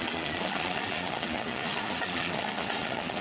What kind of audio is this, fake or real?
fake